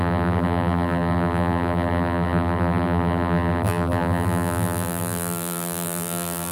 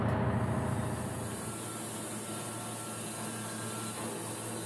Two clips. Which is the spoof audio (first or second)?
first